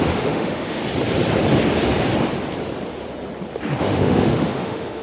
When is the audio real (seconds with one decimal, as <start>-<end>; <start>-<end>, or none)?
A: 0.8-3.8